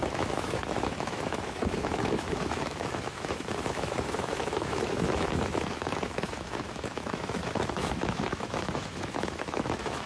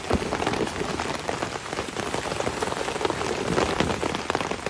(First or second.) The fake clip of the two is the first